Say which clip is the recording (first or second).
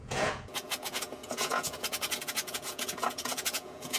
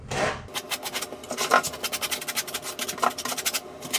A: second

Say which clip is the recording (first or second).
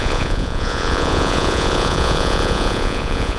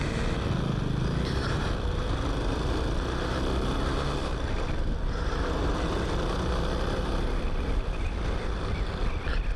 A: second